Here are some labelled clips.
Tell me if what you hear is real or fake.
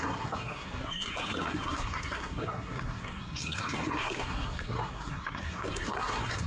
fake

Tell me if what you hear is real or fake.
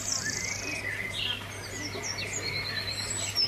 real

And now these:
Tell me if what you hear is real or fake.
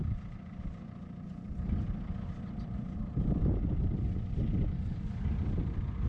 fake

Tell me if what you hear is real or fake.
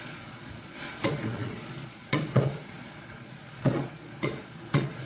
fake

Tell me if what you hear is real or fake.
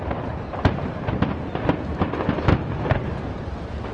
real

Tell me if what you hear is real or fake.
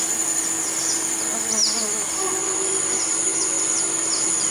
real